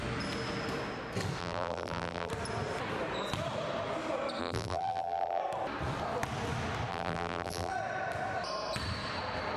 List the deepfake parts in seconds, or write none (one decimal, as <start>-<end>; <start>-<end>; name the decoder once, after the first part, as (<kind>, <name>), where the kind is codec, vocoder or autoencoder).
1.4-2.3 (vocoder, BigVGAN v2); 4.4-5.4; 6.9-7.7